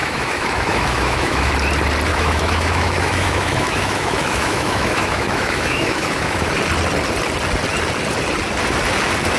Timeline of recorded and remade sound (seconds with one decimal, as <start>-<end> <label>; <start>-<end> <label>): 0.0-1.5 remade; 1.5-2.1 recorded; 2.1-6.5 remade; 6.5-9.4 recorded